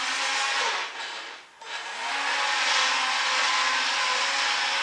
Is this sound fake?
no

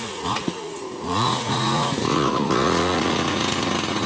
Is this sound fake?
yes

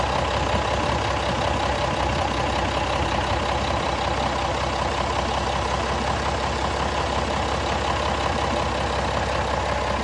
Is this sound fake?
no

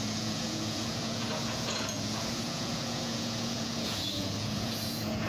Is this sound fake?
yes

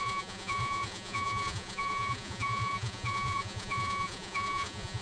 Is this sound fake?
yes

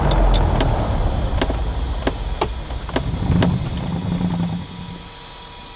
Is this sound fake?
no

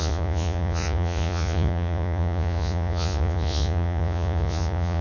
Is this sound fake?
yes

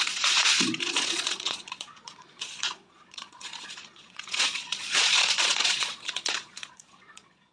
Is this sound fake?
yes